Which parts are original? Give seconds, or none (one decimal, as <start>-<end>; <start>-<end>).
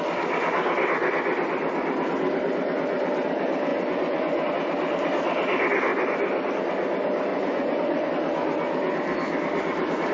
0.0-3.7; 4.5-7.3; 8.1-10.1